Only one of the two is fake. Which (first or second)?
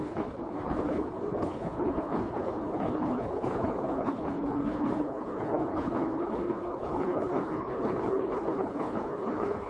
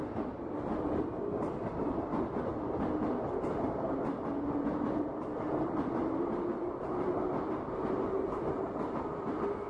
first